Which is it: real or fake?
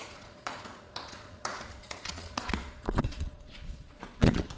fake